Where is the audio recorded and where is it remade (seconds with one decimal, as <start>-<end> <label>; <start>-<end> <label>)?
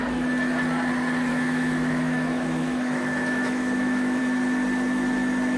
0.0-1.3 recorded; 1.3-4.2 remade; 4.2-5.6 recorded